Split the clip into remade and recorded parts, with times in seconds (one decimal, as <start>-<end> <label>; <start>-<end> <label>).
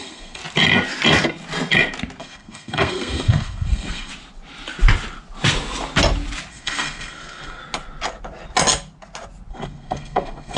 0.0-0.4 remade; 0.4-2.2 recorded; 2.2-4.1 remade; 4.1-6.5 recorded; 6.5-7.6 remade; 7.6-9.5 recorded; 9.5-10.6 remade